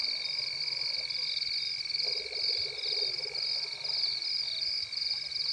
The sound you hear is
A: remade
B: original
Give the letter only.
B